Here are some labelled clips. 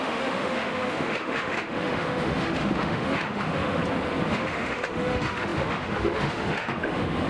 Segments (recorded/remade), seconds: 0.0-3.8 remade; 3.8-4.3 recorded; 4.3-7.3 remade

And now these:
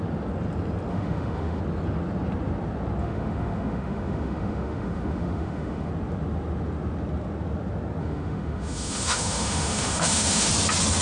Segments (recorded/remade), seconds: 0.0-0.9 recorded; 0.9-1.6 remade; 1.6-3.0 recorded; 3.0-5.9 remade; 5.9-8.0 recorded; 8.0-10.5 remade; 10.5-11.0 recorded

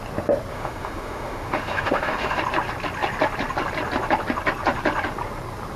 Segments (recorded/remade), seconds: 0.0-0.5 recorded; 0.5-2.4 remade; 2.4-5.8 recorded

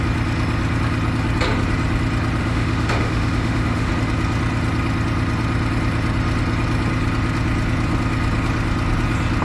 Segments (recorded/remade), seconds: 0.0-2.4 recorded; 2.4-3.9 remade; 3.9-9.4 recorded

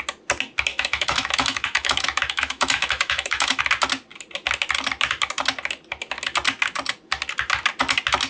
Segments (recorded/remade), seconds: 0.0-0.7 recorded; 0.7-3.6 remade; 3.6-8.3 recorded